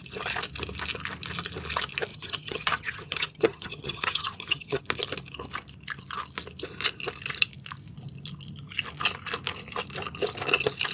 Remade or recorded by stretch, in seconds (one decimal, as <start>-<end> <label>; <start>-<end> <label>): 0.0-2.1 recorded; 2.1-4.8 remade; 4.8-10.9 recorded